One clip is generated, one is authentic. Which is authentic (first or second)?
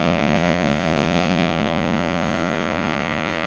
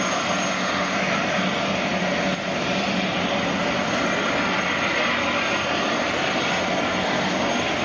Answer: second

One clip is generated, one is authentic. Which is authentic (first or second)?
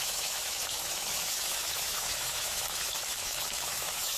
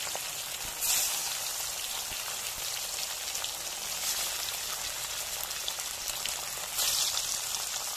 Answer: second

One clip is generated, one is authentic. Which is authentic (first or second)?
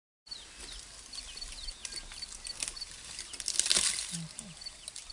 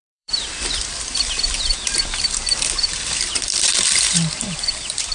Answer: first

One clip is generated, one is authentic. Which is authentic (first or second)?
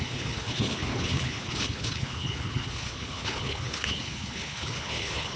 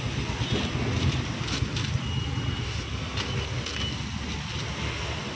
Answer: second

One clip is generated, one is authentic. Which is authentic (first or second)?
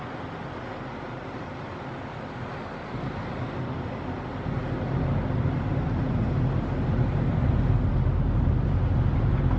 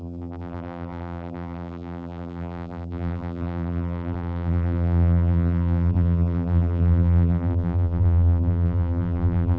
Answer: first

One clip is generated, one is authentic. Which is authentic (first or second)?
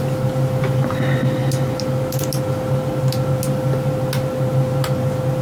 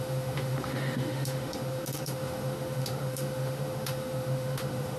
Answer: first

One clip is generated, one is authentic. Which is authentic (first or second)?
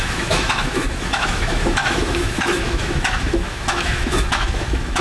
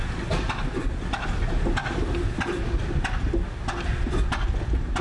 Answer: second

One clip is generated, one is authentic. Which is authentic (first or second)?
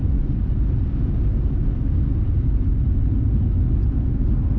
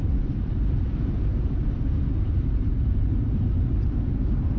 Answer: first